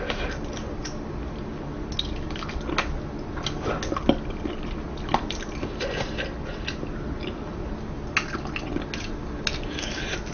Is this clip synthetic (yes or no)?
no